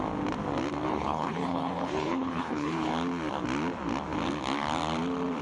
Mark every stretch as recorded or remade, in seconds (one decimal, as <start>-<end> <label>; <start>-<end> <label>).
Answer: 0.0-0.9 recorded; 0.9-2.9 remade; 2.9-5.4 recorded